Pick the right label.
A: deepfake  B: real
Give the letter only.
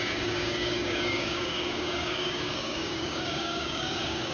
A